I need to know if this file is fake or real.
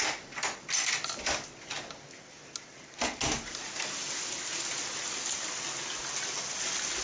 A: real